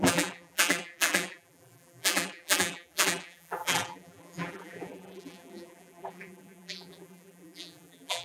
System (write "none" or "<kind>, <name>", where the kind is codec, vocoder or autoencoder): vocoder, BigVGAN v2